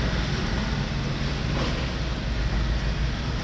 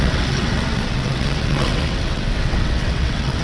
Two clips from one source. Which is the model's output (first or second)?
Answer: second